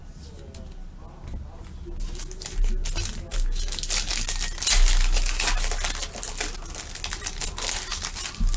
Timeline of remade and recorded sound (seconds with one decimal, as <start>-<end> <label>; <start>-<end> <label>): 0.0-8.6 recorded